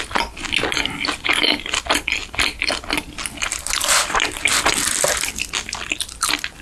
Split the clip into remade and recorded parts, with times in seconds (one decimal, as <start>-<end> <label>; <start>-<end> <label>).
0.0-6.6 recorded